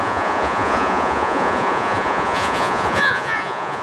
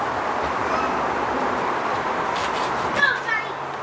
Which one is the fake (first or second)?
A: first